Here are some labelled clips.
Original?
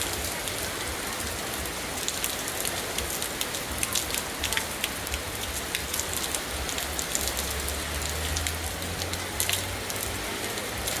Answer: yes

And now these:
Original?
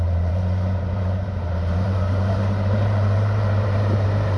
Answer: no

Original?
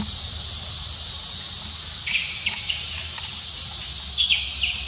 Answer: yes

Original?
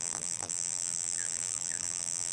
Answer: no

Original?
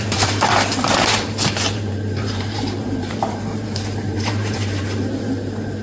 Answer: no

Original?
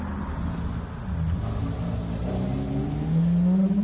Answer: yes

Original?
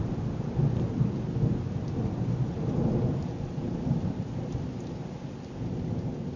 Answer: yes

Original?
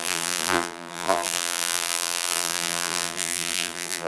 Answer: no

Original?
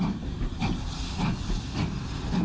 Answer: yes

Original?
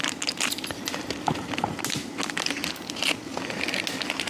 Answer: yes